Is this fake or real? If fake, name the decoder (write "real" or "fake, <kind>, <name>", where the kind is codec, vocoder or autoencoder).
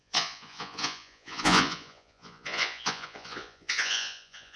fake, vocoder, Vocos